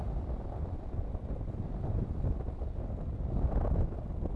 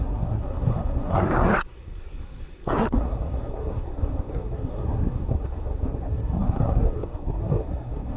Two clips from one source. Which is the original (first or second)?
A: first